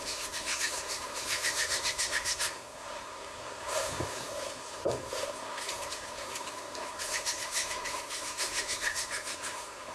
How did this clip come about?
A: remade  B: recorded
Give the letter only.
A